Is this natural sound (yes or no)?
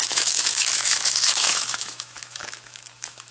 no